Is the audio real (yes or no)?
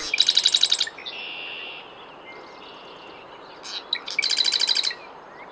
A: yes